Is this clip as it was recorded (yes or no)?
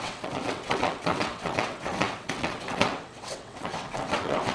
no